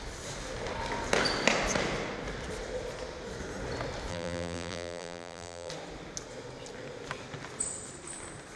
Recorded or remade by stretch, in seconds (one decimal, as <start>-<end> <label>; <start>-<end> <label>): 0.0-4.1 recorded; 4.1-5.7 remade; 5.7-8.6 recorded